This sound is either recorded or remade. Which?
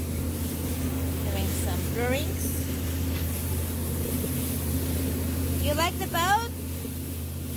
recorded